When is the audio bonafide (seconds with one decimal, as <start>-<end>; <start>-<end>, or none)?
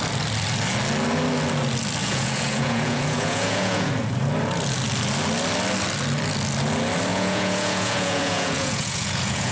0.0-2.0; 3.9-7.1